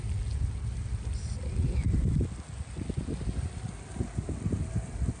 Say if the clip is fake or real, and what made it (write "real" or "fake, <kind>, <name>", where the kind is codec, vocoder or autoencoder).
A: real